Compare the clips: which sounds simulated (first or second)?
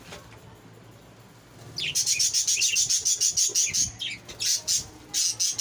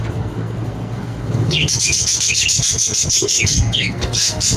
second